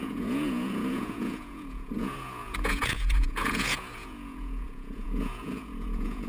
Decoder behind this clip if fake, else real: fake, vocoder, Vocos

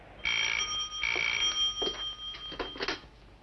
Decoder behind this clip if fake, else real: real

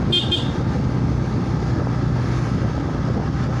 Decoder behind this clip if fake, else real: real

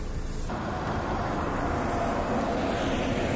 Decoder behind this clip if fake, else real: real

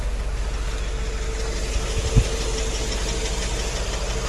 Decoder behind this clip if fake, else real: real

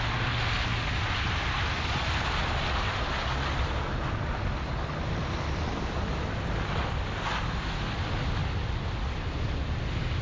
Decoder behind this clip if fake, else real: real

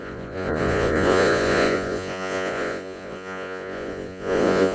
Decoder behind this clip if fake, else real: fake, vocoder, Vocos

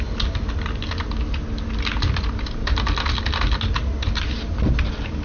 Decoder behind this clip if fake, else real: real